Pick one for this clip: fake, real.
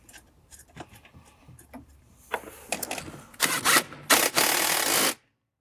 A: fake